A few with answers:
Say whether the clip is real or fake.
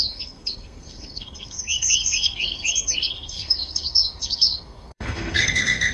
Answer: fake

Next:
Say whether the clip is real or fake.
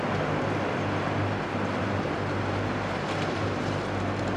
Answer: real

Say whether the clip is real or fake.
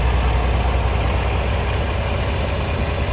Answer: real